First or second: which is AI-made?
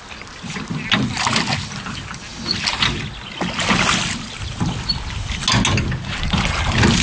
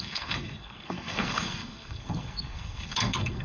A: second